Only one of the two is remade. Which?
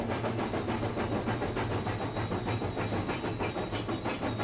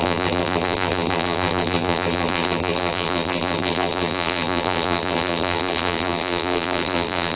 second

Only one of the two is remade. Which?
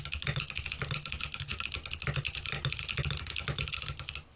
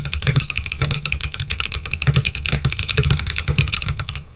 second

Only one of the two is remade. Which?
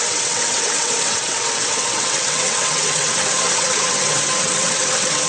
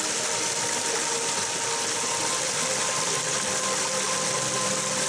first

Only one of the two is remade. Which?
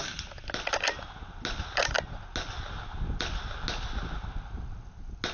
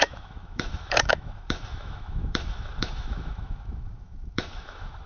second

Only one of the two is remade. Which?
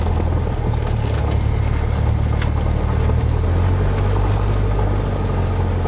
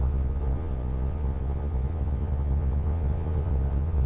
second